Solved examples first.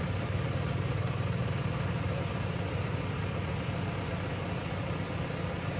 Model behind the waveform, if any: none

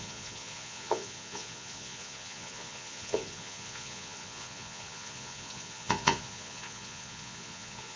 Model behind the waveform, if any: vocoder, Vocos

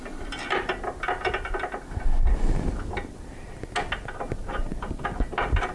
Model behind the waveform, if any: none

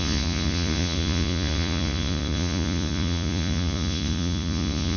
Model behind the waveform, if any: vocoder, Vocos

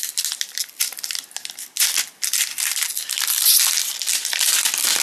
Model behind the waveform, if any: none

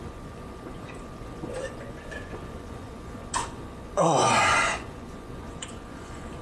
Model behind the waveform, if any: vocoder, Vocos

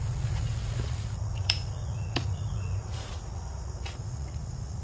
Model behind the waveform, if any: vocoder, Vocos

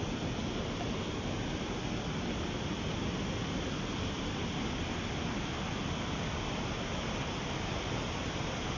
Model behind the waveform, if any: none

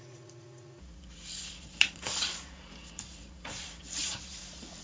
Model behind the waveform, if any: vocoder, Vocos